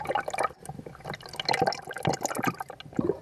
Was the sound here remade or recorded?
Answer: recorded